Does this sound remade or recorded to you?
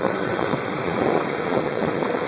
remade